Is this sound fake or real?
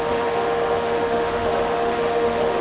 fake